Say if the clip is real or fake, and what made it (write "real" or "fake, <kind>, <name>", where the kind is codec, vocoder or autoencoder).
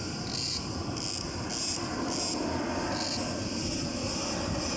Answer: real